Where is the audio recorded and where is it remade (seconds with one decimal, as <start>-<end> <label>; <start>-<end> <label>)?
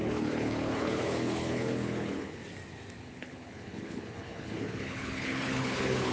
0.0-2.4 remade; 2.4-3.0 recorded; 3.0-6.1 remade